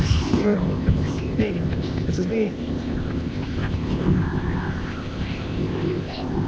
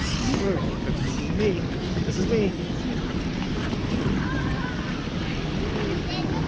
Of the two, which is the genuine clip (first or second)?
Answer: second